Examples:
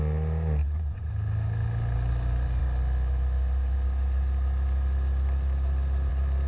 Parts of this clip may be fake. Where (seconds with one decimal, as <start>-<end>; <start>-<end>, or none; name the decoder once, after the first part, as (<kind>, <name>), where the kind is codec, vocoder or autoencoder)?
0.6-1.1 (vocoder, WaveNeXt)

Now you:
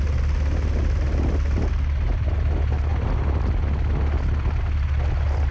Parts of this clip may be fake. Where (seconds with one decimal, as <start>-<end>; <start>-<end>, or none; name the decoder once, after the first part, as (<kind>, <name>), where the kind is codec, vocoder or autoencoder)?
none

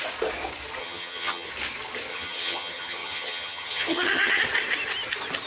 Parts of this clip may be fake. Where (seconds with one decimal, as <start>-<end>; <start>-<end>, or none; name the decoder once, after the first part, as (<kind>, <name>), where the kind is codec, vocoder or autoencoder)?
0.8-1.5 (vocoder, HiFi-GAN); 2.1-4.4

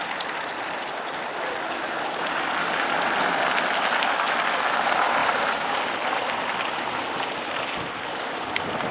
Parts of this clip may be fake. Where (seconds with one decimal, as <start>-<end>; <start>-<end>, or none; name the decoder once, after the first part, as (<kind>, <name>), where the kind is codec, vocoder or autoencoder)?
5.2-5.8 (vocoder, BigVGAN v2)

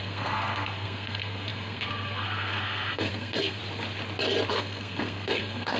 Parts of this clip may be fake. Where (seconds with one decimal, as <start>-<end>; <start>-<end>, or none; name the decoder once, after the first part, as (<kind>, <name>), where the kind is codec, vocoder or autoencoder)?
0.0-3.6 (codec, SNAC); 4.5-5.8